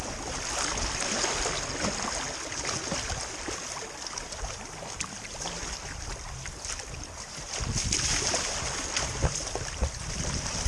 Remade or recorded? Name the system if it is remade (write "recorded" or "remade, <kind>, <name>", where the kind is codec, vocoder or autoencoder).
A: recorded